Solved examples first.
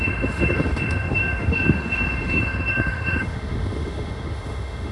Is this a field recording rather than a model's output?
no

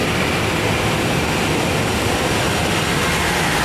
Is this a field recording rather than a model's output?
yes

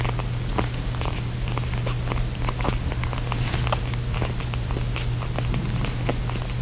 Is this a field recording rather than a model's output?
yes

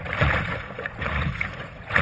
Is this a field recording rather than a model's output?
no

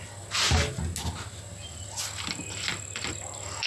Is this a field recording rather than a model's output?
yes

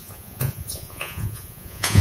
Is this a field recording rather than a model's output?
no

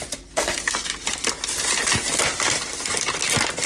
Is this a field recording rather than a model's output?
yes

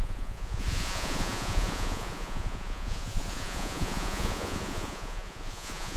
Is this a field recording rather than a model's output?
no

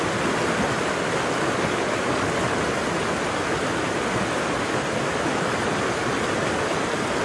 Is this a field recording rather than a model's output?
yes